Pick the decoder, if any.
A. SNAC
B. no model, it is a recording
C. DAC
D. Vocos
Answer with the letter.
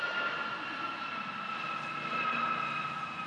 B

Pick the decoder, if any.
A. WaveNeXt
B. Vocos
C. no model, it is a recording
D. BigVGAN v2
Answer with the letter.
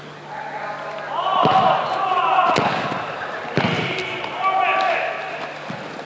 C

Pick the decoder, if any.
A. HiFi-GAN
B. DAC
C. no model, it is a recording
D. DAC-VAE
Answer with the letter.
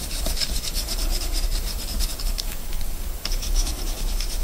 B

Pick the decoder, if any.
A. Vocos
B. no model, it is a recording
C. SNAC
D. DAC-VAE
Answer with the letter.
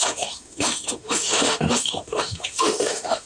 D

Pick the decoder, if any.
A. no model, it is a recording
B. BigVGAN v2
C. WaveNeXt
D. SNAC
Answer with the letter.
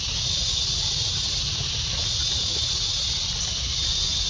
A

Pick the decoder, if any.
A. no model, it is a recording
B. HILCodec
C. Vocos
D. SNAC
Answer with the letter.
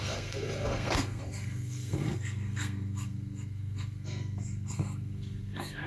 D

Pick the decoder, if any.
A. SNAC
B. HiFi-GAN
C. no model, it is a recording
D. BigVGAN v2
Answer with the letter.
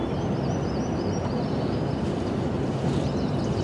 D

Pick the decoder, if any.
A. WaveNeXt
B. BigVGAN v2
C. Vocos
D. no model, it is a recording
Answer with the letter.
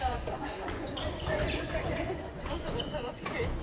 C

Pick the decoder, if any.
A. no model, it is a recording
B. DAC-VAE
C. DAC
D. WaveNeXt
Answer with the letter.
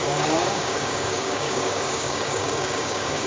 C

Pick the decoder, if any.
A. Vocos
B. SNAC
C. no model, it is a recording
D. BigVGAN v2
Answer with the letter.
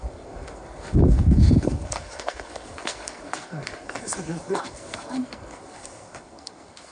B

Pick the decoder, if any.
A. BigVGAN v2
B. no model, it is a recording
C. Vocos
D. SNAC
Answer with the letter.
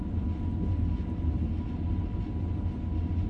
B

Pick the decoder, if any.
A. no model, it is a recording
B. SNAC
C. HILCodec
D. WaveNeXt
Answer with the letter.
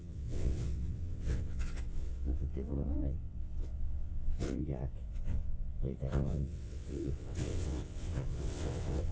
D